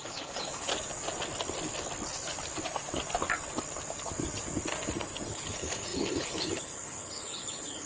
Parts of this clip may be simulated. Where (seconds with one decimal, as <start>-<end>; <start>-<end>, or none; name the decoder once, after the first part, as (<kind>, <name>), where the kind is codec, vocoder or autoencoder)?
0.0-0.7 (codec, HILCodec); 5.3-7.9